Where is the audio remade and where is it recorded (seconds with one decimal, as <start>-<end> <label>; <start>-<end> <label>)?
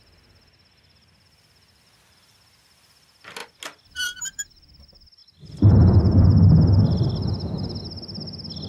0.0-8.7 recorded